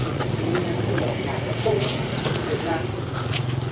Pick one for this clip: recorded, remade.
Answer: remade